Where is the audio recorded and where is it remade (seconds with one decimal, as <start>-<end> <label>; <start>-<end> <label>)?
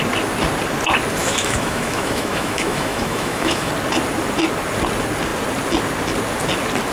0.0-1.2 recorded; 1.2-3.7 remade; 3.7-6.9 recorded